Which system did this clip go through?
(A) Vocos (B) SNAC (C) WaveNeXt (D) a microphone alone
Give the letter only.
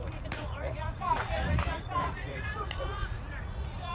A